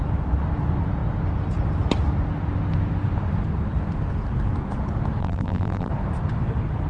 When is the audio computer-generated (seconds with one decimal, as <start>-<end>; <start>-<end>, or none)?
5.2-5.9